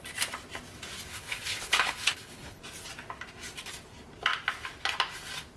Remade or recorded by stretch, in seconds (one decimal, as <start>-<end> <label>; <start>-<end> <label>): 0.0-1.1 recorded; 1.1-2.6 remade; 2.6-5.6 recorded